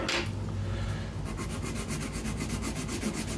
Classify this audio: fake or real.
real